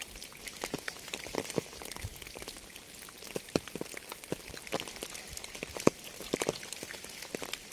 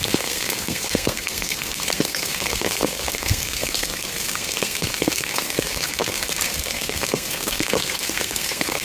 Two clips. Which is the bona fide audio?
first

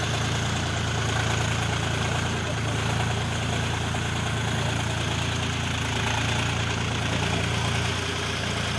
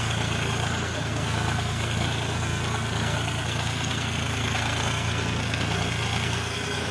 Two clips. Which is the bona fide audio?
first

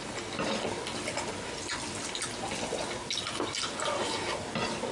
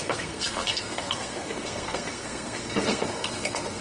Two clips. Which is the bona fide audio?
first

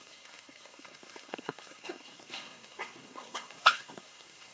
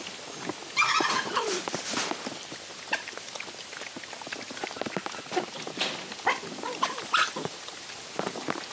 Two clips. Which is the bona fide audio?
second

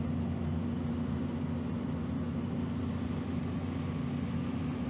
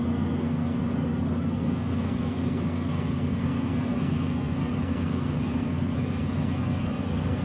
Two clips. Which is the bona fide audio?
first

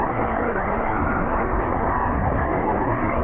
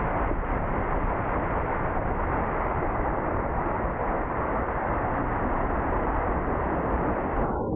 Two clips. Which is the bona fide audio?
second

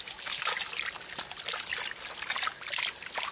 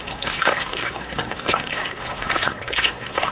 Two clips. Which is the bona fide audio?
first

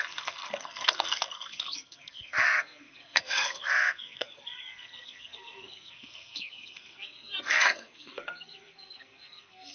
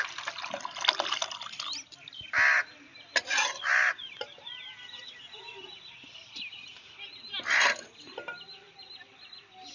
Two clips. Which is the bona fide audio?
second